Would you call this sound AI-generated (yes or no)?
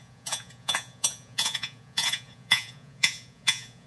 yes